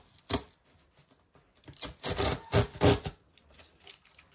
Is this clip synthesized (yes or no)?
no